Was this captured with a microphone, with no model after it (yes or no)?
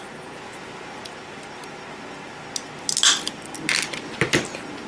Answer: yes